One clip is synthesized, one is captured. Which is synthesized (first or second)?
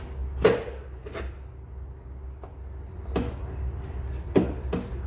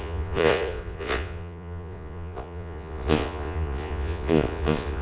second